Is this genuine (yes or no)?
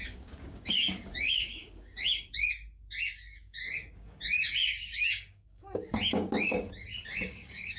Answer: no